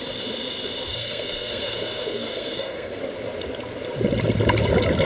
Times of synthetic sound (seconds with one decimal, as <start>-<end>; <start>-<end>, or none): 0.9-3.0